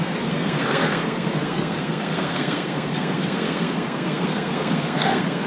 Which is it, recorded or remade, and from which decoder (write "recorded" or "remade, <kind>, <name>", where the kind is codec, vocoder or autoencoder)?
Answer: remade, codec, SNAC